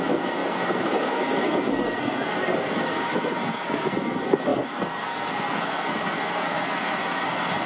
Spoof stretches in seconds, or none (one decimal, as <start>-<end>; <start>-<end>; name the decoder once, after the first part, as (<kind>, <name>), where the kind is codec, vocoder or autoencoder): 0.0-7.7 (codec, SNAC)

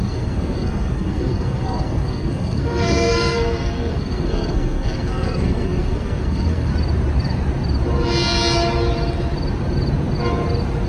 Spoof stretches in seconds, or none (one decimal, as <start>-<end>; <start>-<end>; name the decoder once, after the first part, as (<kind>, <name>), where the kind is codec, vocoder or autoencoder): 0.0-6.7 (codec, SNAC)

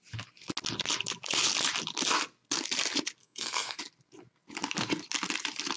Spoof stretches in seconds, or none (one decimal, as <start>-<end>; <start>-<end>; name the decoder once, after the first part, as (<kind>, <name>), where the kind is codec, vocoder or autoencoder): 3.2-3.8 (codec, SNAC)

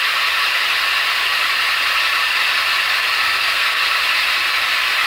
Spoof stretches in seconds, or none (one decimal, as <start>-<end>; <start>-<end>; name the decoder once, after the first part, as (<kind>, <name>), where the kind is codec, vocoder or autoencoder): 3.2-3.8 (codec, SNAC)

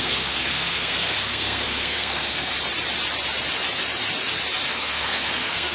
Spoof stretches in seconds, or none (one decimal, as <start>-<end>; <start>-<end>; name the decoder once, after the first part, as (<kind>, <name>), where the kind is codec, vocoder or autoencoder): 0.0-2.5 (codec, SNAC); 4.7-5.7

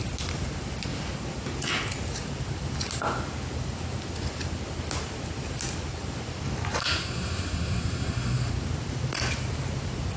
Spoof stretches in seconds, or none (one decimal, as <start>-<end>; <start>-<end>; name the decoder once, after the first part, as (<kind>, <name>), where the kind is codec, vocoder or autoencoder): 6.8-8.5 (codec, SNAC)

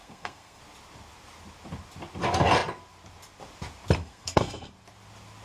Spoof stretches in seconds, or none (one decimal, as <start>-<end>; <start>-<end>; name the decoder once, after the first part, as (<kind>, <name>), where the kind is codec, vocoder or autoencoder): 0.0-0.6 (codec, SNAC); 4.0-4.7